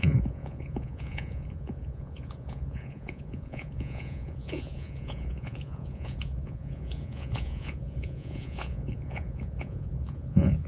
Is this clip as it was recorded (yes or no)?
no